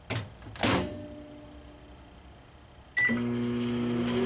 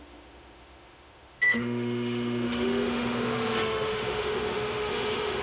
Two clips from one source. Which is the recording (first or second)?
first